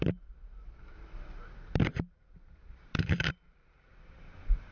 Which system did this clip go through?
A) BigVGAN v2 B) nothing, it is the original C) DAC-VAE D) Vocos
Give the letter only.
A